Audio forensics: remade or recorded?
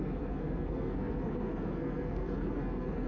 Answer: remade